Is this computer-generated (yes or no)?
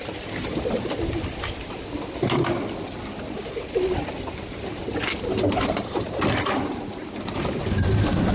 no